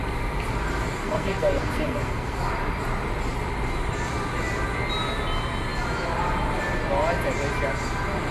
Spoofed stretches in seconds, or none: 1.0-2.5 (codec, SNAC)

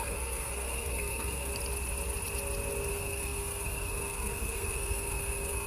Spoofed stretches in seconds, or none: 0.0-1.5 (codec, SNAC); 2.9-5.7

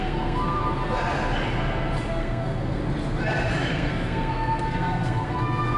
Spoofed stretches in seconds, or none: 0.0-0.6 (codec, SNAC); 2.1-2.8; 3.7-5.8